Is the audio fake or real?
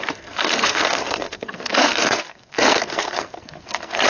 fake